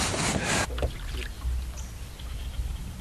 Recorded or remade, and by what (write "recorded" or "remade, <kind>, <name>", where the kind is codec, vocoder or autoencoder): recorded